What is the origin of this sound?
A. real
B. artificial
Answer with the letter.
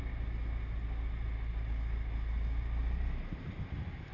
A